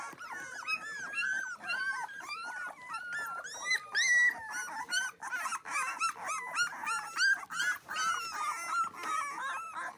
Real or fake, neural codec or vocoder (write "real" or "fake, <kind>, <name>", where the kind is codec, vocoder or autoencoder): real